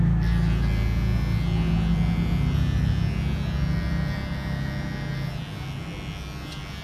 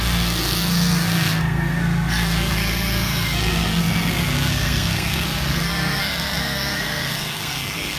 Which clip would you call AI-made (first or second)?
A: second